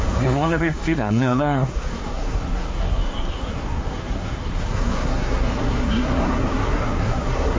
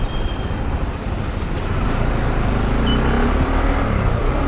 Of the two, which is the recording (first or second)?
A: second